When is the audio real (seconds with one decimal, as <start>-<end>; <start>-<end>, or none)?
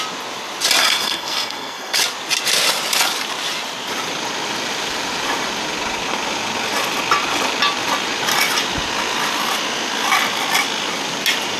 0.0-0.8; 2.0-11.6